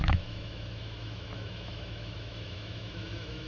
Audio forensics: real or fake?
fake